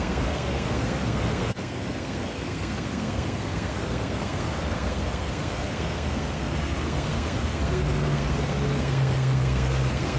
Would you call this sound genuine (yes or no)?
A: no